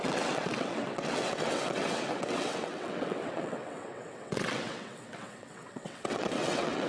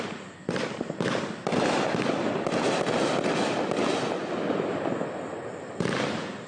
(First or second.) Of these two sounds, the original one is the second